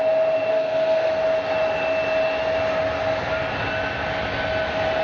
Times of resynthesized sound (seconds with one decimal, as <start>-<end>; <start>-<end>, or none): 0.5-1.1